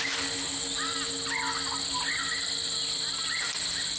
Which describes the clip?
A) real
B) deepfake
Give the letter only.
A